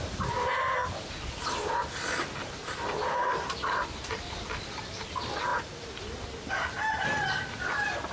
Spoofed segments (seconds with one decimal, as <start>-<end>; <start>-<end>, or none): none